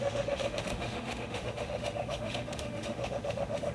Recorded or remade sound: remade